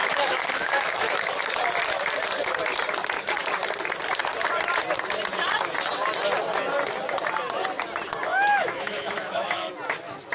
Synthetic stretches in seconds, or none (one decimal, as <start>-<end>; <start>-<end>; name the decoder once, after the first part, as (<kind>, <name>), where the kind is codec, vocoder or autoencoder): 0.0-1.3 (autoencoder, DAC-VAE); 8.3-9.7

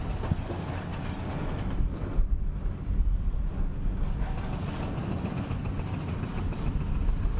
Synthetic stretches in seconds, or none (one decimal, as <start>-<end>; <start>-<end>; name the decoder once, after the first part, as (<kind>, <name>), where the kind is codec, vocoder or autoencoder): none

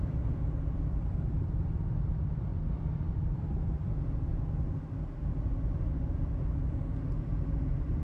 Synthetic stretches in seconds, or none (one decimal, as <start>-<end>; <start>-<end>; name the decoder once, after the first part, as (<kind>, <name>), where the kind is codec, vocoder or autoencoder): 0.0-4.3 (vocoder, BigVGAN v2); 5.8-8.0

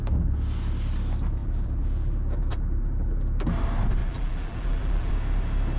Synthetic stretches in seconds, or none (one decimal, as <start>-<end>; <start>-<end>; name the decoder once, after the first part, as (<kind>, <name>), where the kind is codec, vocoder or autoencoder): 1.4-3.5 (vocoder, BigVGAN v2); 4.0-5.1

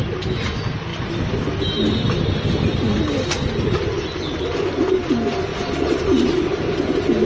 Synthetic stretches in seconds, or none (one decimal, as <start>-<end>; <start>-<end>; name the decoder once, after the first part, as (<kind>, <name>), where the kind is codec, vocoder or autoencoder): 5.5-6.3 (vocoder, Vocos)

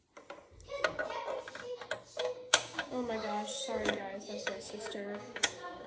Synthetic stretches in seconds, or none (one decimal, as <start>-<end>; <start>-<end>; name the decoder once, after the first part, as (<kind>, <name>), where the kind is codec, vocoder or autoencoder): 2.2-5.9 (codec, DAC)